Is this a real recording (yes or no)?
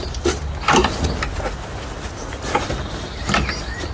yes